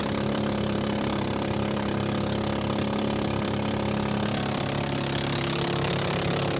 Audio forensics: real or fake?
real